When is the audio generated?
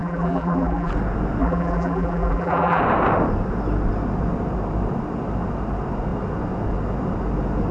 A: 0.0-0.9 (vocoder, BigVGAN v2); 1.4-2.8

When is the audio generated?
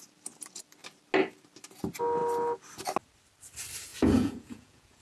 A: 3.9-5.0 (vocoder, Vocos)